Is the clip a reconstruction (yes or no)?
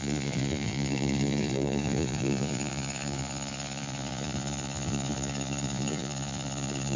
yes